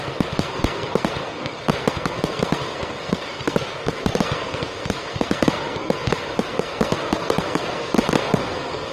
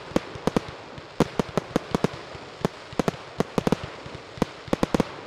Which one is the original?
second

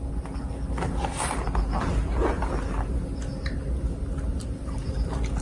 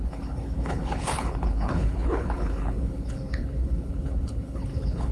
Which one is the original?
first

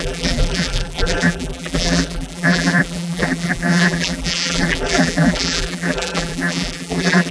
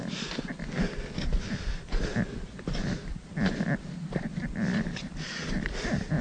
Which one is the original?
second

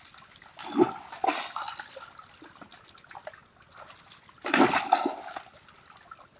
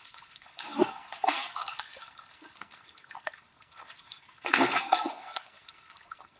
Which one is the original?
first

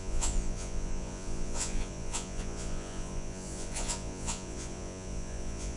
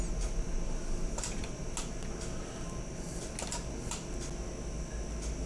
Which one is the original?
second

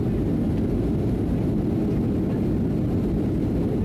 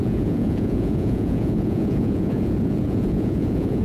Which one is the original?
first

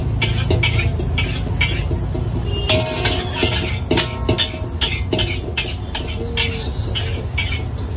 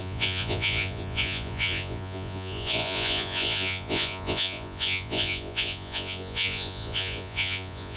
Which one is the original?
first